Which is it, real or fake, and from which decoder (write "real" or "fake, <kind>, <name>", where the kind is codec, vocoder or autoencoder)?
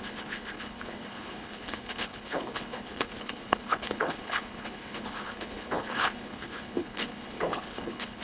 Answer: fake, codec, HILCodec